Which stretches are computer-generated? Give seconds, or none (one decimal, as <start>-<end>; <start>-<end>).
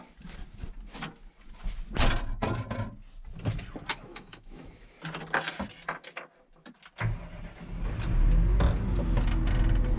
3.9-4.9